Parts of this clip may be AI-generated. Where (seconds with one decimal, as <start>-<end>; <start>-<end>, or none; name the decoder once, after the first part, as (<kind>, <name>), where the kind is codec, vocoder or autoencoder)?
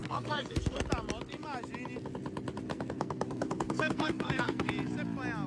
0.0-0.8 (codec, SNAC); 2.7-4.7